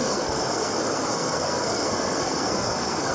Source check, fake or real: fake